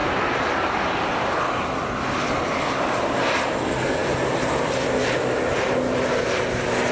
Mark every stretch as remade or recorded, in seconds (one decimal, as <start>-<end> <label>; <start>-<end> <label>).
0.0-6.9 recorded